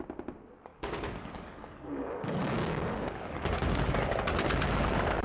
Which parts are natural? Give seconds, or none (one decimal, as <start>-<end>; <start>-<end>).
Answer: 0.0-0.7; 3.4-5.2